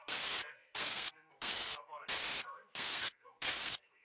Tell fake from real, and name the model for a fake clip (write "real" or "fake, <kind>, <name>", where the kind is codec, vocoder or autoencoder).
fake, codec, SNAC